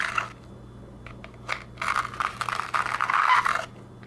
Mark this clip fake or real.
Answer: real